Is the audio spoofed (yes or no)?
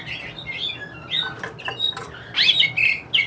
no